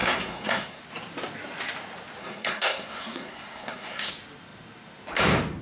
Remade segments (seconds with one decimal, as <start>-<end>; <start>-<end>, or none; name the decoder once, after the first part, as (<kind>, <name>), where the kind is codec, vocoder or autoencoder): 0.0-0.8 (codec, SNAC); 2.2-4.1